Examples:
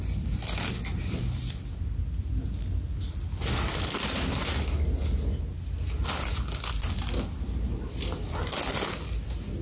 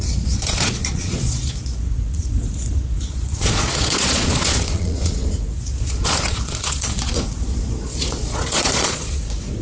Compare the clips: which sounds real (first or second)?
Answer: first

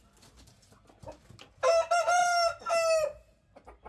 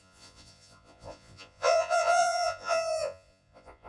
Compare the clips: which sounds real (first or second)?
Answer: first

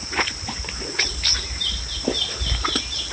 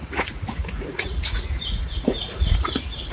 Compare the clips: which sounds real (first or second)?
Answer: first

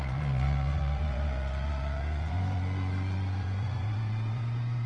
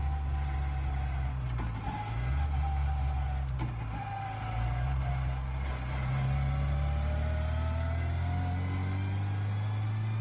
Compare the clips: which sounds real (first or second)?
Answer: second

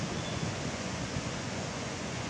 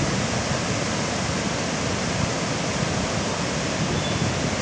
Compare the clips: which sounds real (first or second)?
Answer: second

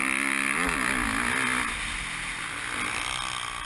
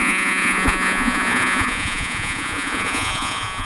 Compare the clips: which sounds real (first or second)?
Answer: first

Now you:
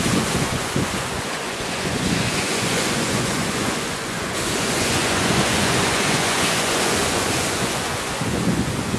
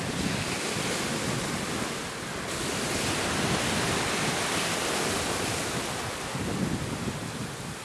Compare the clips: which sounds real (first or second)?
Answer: second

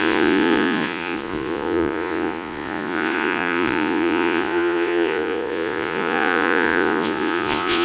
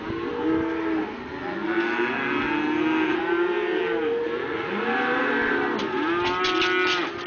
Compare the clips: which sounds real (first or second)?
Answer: second